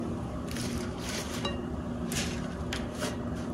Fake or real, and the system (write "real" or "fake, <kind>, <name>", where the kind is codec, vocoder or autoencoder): fake, vocoder, BigVGAN v2